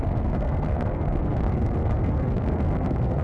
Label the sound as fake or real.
fake